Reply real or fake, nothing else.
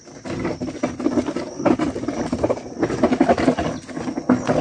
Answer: real